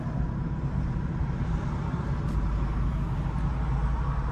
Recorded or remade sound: remade